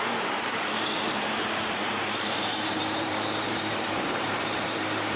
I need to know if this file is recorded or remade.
remade